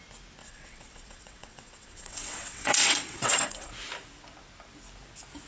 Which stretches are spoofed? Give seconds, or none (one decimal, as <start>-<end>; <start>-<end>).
0.4-3.7